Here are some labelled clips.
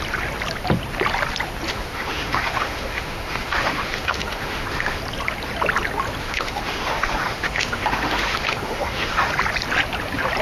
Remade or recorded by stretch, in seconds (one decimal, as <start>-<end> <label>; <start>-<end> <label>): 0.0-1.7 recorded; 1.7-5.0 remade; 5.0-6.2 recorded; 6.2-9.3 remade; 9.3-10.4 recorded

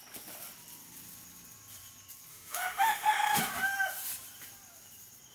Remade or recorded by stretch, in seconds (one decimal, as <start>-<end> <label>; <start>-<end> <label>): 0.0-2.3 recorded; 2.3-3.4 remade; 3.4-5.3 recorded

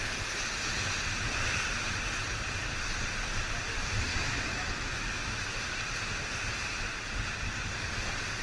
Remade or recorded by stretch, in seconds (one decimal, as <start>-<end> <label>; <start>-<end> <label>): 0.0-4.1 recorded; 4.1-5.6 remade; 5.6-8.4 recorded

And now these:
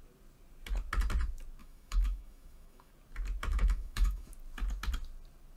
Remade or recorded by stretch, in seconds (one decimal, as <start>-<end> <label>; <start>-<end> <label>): 0.0-1.6 recorded; 1.6-2.9 remade; 2.9-3.5 recorded; 3.5-4.3 remade; 4.3-5.6 recorded